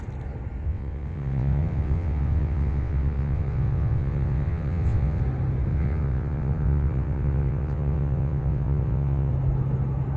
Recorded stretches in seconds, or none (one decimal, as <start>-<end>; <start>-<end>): 0.0-0.6; 5.2-5.7; 9.3-10.2